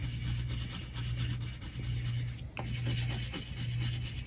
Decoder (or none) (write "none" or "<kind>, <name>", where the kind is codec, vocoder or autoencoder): none